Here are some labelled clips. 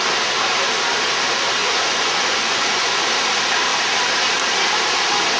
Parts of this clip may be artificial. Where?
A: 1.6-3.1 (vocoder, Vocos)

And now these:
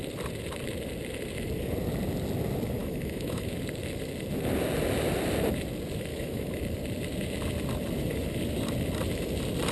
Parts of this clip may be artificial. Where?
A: 2.8-3.5 (autoencoder, DAC-VAE); 6.1-6.6

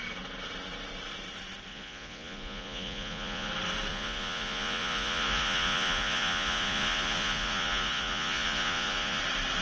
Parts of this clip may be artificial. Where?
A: 1.7-3.5 (vocoder, Vocos); 3.9-9.2

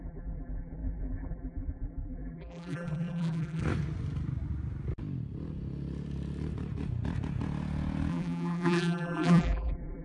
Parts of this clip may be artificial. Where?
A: 0.0-3.6 (vocoder, BigVGAN v2); 8.1-10.0

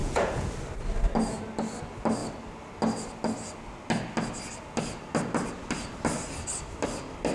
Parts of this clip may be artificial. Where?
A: 0.0-0.5 (vocoder, Vocos)

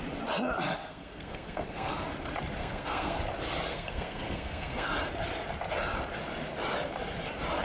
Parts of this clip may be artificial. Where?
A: 0.8-1.9 (codec, SNAC); 2.6-3.2; 3.7-4.9

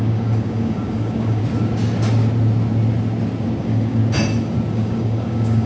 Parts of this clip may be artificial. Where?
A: 0.0-1.4 (codec, DAC); 3.6-4.0; 4.7-5.7